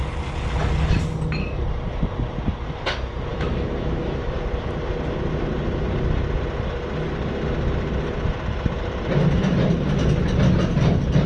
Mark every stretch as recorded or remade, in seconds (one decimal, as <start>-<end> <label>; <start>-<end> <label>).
0.0-3.3 recorded; 3.3-4.4 remade; 4.4-11.3 recorded